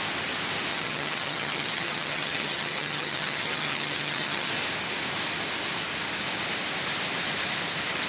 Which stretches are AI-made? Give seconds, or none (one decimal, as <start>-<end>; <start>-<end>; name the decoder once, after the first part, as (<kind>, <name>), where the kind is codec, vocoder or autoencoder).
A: 0.7-4.5 (vocoder, HiFi-GAN)